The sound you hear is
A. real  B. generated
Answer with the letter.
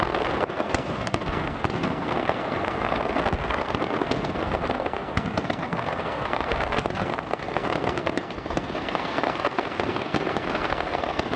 B